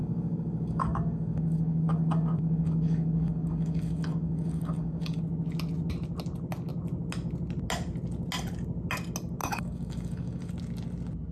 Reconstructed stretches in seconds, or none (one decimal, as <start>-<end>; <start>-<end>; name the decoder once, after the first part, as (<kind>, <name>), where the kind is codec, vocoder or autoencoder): 0.0-5.2 (codec, DAC); 9.4-10.5